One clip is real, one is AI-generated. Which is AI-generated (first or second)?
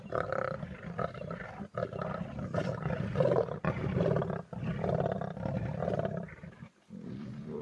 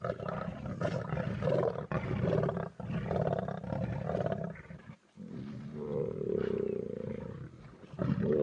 first